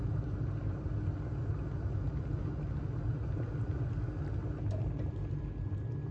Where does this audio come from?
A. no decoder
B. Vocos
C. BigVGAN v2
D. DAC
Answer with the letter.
A